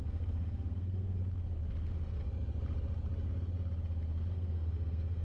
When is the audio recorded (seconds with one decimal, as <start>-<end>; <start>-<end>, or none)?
1.2-4.3